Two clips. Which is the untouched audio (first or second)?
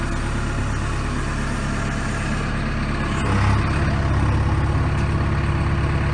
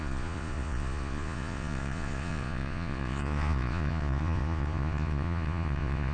first